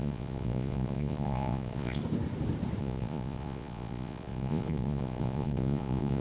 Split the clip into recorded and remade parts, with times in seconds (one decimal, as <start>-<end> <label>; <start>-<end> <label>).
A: 0.0-2.0 remade; 2.0-2.8 recorded; 2.8-6.2 remade